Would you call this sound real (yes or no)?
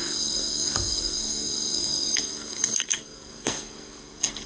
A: no